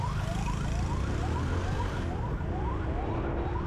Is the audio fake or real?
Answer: real